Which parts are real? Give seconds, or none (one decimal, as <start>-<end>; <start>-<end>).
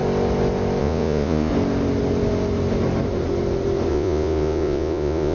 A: 0.0-0.8; 1.5-3.9